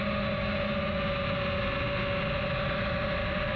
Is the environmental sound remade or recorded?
recorded